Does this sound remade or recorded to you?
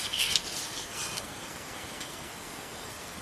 remade